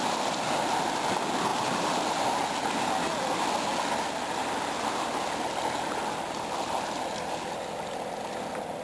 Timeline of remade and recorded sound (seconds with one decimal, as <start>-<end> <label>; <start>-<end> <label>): 0.0-8.8 recorded